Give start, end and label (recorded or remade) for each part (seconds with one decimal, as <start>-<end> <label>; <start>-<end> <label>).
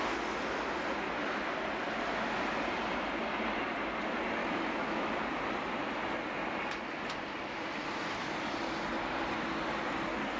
0.0-4.4 recorded; 4.4-5.1 remade; 5.1-10.4 recorded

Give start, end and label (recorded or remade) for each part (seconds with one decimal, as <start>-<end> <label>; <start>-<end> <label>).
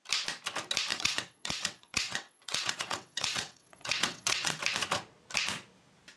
0.0-0.9 recorded; 0.9-4.6 remade; 4.6-6.2 recorded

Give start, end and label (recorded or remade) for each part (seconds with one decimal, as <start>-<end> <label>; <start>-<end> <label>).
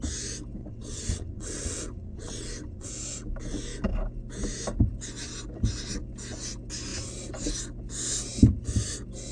0.0-0.6 recorded; 0.6-2.9 remade; 2.9-9.3 recorded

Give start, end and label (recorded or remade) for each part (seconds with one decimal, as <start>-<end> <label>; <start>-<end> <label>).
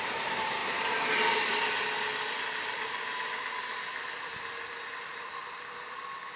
0.0-6.4 recorded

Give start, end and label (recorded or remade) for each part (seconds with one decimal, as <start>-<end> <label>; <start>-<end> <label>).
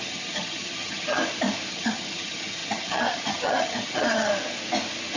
0.0-1.2 remade; 1.2-1.7 recorded; 1.7-4.3 remade; 4.3-5.2 recorded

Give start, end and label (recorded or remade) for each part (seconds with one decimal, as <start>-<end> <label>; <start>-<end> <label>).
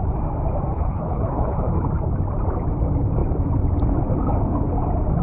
0.0-0.7 recorded; 0.7-1.9 remade; 1.9-5.2 recorded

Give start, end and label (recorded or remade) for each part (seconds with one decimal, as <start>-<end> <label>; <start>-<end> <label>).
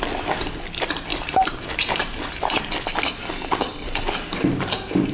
0.0-1.1 recorded; 1.1-2.6 remade; 2.6-5.1 recorded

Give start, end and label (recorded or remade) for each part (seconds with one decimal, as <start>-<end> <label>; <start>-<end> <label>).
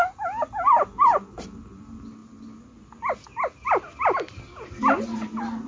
0.0-5.7 recorded